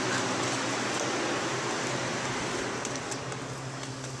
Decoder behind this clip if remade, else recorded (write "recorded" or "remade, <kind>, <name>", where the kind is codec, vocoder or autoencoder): recorded